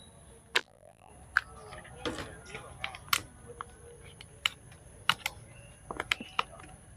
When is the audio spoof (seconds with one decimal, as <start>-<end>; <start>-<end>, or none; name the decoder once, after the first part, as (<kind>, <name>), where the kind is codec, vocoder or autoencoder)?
0.6-1.1 (vocoder, BigVGAN v2)